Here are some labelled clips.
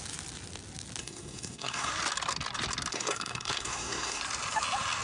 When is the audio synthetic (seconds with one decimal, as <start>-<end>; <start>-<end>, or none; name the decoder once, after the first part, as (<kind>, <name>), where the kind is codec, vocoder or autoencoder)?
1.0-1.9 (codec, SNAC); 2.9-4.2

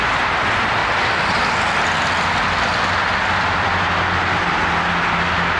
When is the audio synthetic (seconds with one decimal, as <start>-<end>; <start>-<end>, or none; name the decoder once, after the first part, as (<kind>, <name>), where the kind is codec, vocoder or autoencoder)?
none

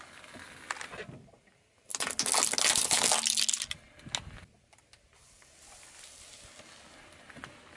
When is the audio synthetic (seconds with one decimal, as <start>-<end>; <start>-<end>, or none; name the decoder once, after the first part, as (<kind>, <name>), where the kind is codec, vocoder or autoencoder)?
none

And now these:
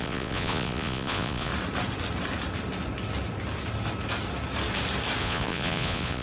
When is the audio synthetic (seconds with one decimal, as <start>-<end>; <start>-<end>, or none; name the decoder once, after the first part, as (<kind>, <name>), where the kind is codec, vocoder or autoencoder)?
0.0-1.5 (vocoder, Vocos); 5.2-6.2

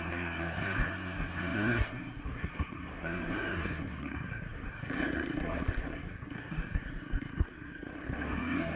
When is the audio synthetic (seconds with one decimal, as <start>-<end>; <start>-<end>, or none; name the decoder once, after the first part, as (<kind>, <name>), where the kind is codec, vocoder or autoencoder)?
0.0-8.8 (codec, SNAC)

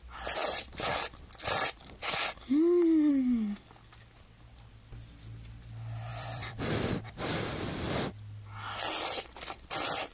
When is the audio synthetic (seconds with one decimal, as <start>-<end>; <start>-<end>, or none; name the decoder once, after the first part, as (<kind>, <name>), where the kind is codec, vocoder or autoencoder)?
0.4-1.0 (vocoder, BigVGAN v2); 6.1-7.4